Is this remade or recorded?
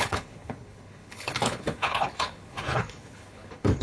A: remade